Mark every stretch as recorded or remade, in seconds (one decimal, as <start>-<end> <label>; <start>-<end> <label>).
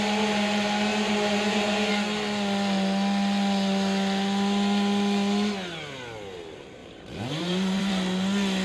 0.0-0.9 recorded; 0.9-1.9 remade; 1.9-6.8 recorded; 6.8-7.9 remade; 7.9-8.6 recorded